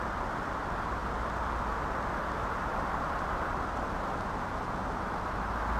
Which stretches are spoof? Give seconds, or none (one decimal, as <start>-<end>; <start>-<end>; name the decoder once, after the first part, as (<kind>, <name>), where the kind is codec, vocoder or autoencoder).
none